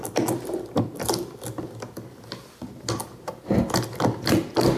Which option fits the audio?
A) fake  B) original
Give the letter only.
B